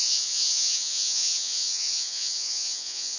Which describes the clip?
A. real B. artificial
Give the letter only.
B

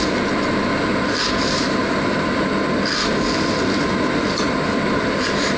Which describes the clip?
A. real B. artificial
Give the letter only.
A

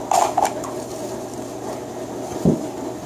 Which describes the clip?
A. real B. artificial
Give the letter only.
A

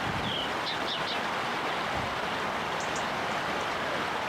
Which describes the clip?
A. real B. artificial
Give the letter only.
A